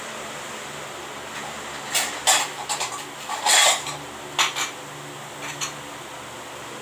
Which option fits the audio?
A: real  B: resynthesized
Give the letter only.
A